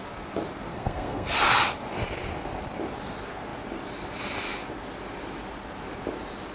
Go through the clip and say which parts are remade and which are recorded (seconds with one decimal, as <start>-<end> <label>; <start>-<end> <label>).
0.0-0.7 recorded; 0.7-1.3 remade; 1.3-6.5 recorded